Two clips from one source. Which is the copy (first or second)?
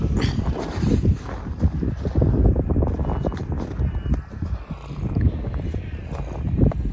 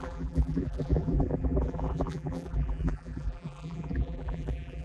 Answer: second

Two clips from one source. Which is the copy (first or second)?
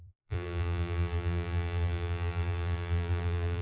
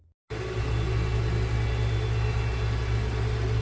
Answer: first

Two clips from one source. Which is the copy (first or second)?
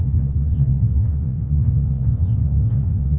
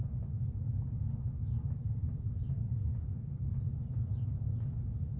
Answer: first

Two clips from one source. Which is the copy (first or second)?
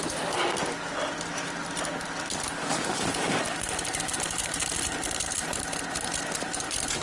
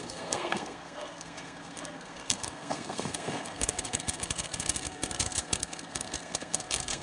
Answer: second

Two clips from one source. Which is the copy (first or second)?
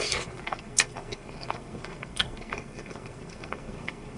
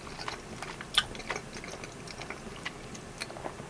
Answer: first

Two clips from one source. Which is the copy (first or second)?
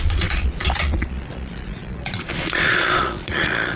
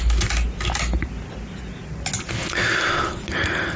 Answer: first